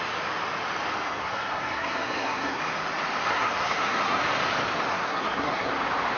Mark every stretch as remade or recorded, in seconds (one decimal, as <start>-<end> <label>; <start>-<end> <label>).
0.0-1.2 recorded; 1.2-2.6 remade; 2.6-3.3 recorded; 3.3-4.2 remade; 4.2-4.9 recorded; 4.9-5.7 remade; 5.7-6.2 recorded